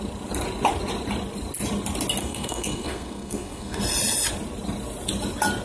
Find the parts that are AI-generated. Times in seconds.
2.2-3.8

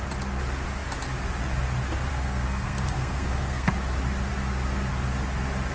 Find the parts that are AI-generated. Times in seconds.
2.1-3.7

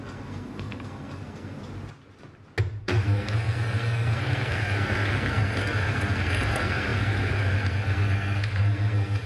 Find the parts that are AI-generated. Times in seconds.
0.0-1.6; 2.8-9.3

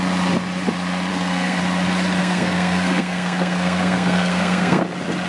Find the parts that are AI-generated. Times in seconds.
1.1-1.6; 2.2-4.8

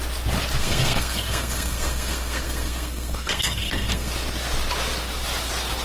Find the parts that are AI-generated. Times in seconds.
0.6-4.1